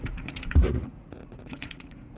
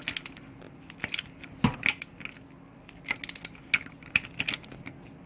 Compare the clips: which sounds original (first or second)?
second